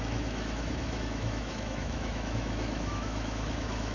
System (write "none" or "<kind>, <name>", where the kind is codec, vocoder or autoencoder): autoencoder, DAC-VAE